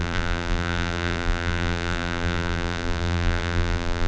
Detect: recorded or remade remade